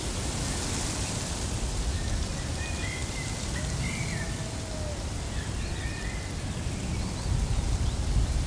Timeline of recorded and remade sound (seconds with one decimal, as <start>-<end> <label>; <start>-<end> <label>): 0.0-8.5 recorded